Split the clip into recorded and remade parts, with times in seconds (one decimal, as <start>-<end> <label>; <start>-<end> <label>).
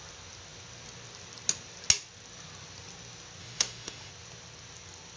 0.0-3.4 recorded; 3.4-4.1 remade; 4.1-5.2 recorded